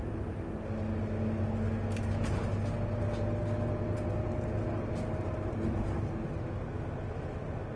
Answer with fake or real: real